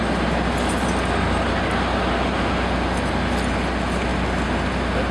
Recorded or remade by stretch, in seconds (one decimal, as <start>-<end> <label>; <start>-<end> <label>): 0.0-5.1 recorded